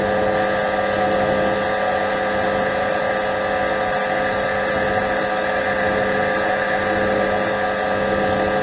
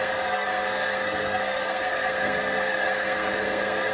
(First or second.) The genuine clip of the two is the first